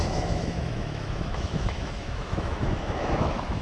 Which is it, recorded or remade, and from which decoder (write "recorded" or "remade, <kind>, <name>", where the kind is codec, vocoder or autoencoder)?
remade, autoencoder, DAC-VAE